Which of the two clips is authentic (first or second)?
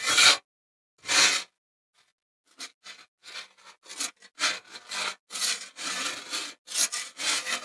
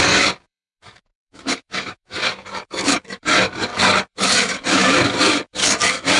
first